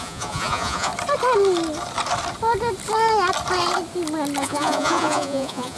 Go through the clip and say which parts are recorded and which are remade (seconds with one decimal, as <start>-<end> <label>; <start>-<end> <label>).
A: 0.0-0.9 remade; 0.9-4.4 recorded; 4.4-5.8 remade